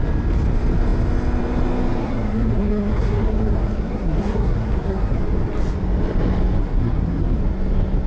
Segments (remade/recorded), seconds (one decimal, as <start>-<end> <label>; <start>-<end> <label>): 0.0-2.0 recorded; 2.0-5.2 remade; 5.2-6.6 recorded; 6.6-7.4 remade; 7.4-8.1 recorded

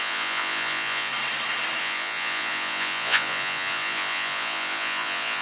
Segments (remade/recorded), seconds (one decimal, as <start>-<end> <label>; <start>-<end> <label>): 0.0-1.1 remade; 1.1-1.8 recorded; 1.8-5.4 remade